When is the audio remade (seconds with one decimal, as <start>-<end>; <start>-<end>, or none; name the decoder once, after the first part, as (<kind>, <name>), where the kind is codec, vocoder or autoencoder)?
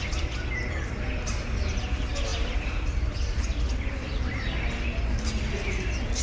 none